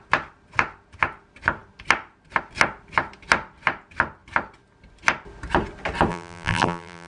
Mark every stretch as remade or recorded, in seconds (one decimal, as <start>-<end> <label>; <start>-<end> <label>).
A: 0.0-6.1 recorded; 6.1-7.1 remade